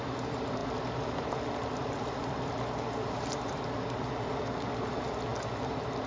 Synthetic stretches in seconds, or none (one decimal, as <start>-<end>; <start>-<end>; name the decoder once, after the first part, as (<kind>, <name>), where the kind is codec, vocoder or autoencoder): 0.6-4.1 (vocoder, BigVGAN v2)